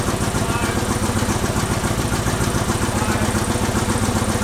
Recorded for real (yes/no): yes